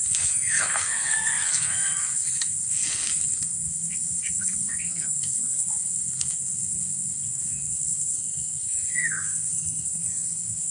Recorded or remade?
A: remade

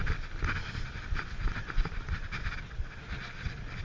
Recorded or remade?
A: recorded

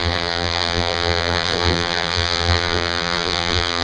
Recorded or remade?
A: remade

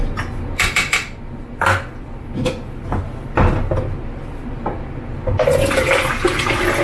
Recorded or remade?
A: recorded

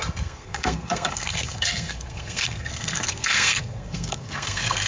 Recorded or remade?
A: remade